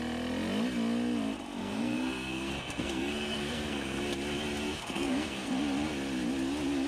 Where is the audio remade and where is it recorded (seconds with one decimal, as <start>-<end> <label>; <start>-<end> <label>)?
0.0-1.6 recorded; 1.6-4.0 remade; 4.0-4.7 recorded; 4.7-5.5 remade; 5.5-6.9 recorded